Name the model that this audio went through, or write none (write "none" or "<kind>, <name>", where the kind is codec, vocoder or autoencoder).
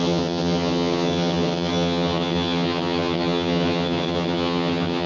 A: vocoder, HiFi-GAN